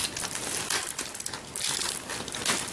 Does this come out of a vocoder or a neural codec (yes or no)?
no